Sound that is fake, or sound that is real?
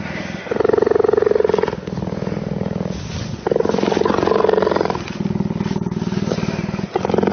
real